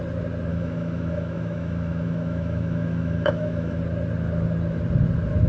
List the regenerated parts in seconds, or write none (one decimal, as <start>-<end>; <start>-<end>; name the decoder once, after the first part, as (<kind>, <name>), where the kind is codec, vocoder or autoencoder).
0.5-3.8 (autoencoder, DAC-VAE)